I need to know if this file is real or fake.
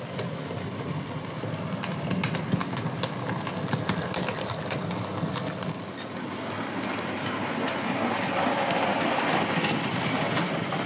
real